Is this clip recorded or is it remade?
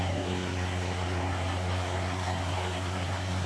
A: remade